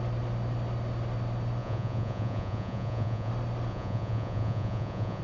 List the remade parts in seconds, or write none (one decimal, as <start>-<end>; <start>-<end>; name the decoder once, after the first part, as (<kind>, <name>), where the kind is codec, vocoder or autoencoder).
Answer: 1.6-3.3 (vocoder, Vocos); 3.7-5.2